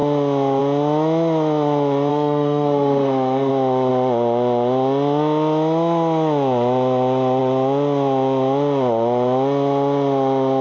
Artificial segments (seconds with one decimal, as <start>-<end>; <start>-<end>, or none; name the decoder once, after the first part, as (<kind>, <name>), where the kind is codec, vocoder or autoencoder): 2.1-3.5 (codec, SNAC)